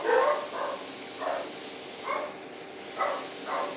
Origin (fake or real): real